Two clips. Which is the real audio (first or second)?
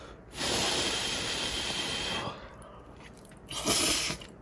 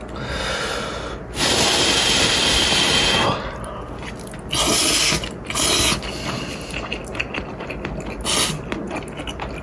second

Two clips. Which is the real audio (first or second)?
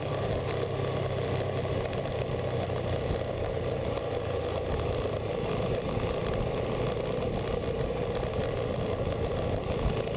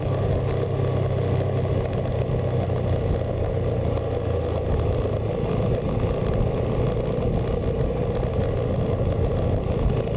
second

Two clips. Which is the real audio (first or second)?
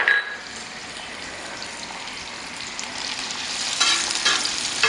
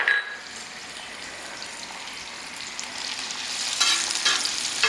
second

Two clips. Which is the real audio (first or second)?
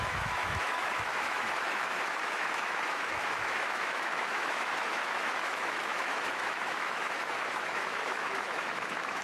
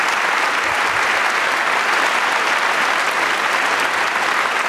second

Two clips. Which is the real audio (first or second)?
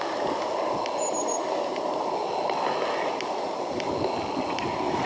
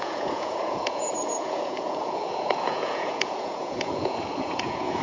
first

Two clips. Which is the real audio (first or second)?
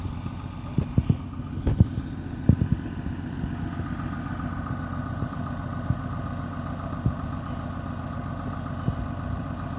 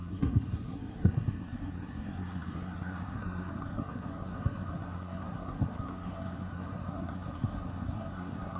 first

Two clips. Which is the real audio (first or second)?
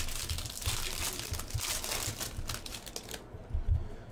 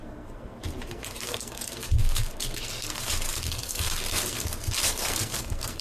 first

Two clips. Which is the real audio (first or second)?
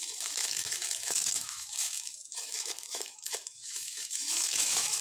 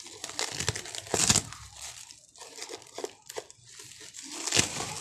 second